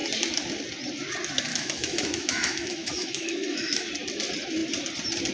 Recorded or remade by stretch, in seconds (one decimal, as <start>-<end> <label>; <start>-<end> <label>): 0.0-1.5 recorded; 1.5-3.9 remade; 3.9-5.3 recorded